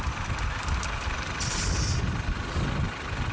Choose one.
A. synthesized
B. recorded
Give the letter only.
B